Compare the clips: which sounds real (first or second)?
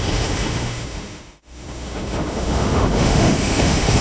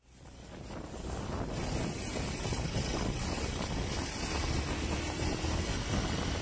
second